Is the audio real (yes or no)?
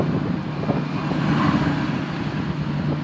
yes